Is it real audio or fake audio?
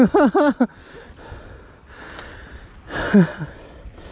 real